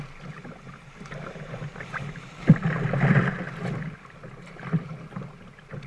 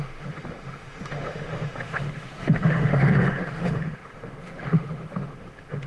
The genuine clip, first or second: first